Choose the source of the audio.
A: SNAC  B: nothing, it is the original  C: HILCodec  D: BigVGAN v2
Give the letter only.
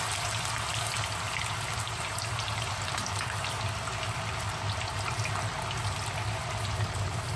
B